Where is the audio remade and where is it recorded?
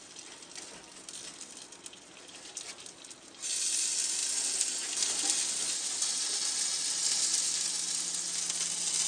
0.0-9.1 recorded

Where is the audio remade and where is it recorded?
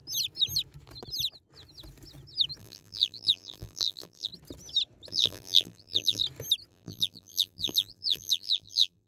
0.0-2.6 recorded; 2.6-4.3 remade; 4.3-5.1 recorded; 5.1-6.2 remade; 6.2-6.7 recorded; 6.7-9.1 remade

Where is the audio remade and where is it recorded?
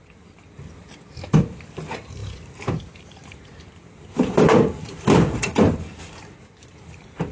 0.0-2.2 remade; 2.2-2.8 recorded; 2.8-5.5 remade; 5.5-6.6 recorded; 6.6-7.3 remade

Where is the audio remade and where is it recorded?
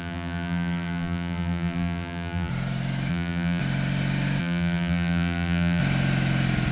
0.0-2.5 remade; 2.5-3.1 recorded; 3.1-3.6 remade; 3.6-4.4 recorded; 4.4-5.8 remade; 5.8-6.7 recorded